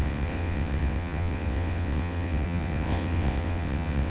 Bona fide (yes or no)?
no